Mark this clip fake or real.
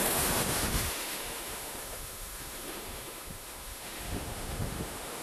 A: fake